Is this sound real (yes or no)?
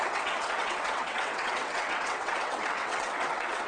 no